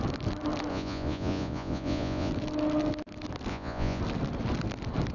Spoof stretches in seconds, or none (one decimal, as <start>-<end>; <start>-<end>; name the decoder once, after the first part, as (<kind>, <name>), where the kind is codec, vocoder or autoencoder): 0.7-2.3 (vocoder, Vocos); 3.5-4.0